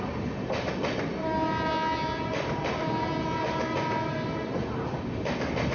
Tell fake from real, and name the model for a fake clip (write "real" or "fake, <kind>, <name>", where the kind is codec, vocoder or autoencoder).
real